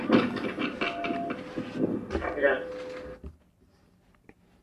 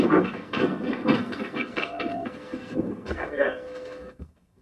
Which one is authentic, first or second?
first